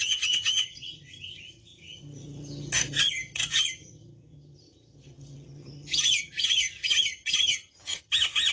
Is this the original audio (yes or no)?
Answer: no